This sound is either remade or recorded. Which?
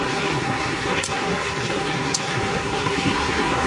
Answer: remade